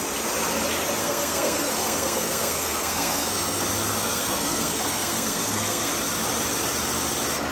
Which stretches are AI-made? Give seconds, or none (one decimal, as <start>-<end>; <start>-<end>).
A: 1.0-3.6; 4.0-5.9